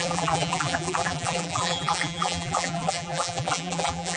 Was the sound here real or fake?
fake